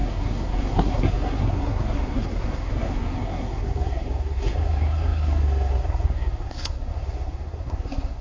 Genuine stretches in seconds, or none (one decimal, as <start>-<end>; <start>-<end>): none